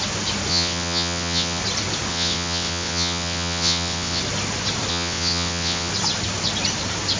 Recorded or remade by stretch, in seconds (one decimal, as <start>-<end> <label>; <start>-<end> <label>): 0.0-0.5 recorded; 0.5-1.6 remade; 1.6-2.1 recorded; 2.1-4.2 remade; 4.2-4.9 recorded; 4.9-5.9 remade; 5.9-7.2 recorded